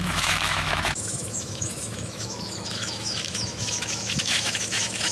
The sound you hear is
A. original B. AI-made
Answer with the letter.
B